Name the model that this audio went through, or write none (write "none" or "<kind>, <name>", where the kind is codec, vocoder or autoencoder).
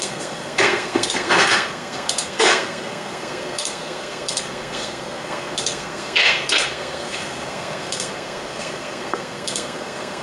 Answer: codec, SNAC